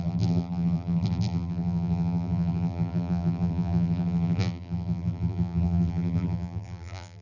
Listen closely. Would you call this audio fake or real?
fake